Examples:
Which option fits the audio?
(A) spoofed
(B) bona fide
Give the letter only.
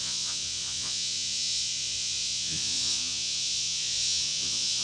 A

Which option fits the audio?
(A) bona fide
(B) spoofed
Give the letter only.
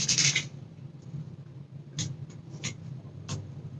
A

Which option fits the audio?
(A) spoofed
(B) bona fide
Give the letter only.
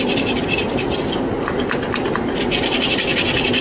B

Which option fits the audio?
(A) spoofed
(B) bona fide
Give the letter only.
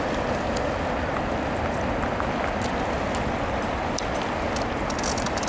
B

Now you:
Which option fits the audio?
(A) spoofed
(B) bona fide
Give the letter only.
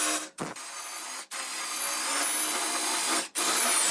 B